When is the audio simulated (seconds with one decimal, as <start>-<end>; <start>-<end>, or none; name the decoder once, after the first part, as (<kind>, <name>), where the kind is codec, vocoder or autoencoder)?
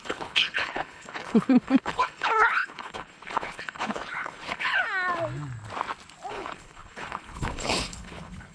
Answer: 0.0-4.8 (codec, HILCodec); 6.3-8.5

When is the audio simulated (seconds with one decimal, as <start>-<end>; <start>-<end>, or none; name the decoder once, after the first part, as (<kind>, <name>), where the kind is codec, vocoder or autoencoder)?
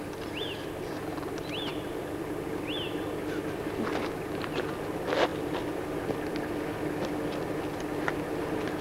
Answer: none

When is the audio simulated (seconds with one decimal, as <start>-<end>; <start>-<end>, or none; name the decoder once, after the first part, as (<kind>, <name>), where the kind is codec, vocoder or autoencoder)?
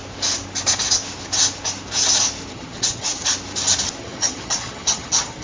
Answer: 2.5-3.3 (vocoder, HiFi-GAN); 4.0-5.4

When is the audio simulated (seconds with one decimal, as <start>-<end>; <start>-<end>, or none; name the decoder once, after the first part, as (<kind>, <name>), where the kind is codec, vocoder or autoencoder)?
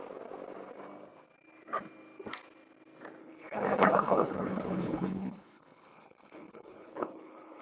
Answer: 3.2-7.6 (codec, HILCodec)